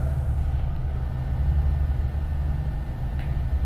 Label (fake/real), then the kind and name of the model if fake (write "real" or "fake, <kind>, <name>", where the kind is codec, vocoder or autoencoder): real